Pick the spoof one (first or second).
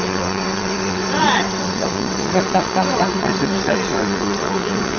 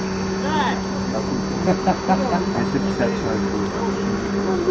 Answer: first